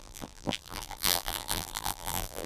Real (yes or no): no